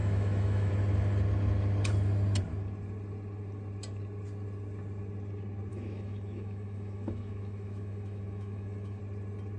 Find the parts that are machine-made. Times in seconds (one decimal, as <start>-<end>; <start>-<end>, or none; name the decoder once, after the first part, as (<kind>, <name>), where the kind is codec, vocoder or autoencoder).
0.0-0.7 (autoencoder, DAC-VAE); 5.7-9.0